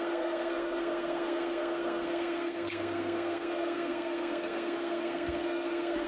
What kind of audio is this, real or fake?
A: fake